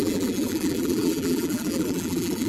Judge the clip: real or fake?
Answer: fake